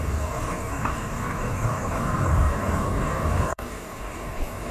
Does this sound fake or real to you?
fake